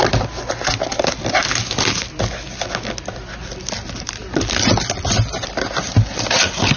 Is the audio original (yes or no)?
yes